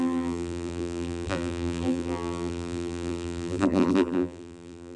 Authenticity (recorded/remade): remade